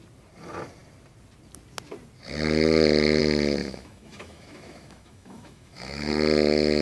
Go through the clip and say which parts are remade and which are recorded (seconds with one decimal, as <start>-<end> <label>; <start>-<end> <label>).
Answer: 0.0-3.6 recorded; 3.6-6.1 remade; 6.1-6.8 recorded